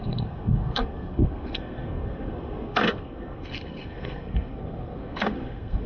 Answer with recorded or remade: remade